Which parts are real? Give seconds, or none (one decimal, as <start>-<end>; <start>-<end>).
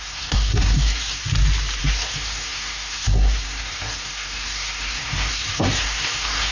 1.2-1.8